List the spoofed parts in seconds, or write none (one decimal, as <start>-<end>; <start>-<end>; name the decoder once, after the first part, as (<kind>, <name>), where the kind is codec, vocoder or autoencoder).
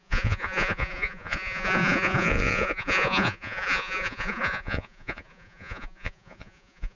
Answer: 0.0-7.0 (vocoder, Vocos)